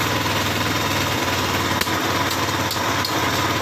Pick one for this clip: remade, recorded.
recorded